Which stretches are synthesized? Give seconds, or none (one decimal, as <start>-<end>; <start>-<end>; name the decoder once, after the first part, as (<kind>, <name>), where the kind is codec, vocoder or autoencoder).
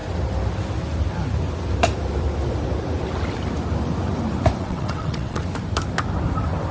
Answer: 4.6-5.4 (vocoder, WaveNeXt)